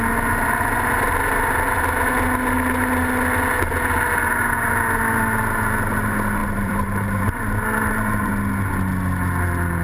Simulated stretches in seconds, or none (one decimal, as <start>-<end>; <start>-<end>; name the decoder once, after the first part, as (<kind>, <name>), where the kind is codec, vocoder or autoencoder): 6.4-8.3 (vocoder, BigVGAN v2)